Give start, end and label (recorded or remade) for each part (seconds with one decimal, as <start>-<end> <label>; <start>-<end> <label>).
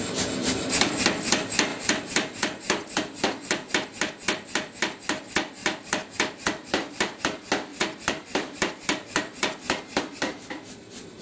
0.0-0.4 recorded; 0.4-1.0 remade; 1.0-1.7 recorded; 1.7-3.7 remade; 3.7-5.6 recorded; 5.6-7.2 remade; 7.2-7.7 recorded; 7.7-10.0 remade; 10.0-11.2 recorded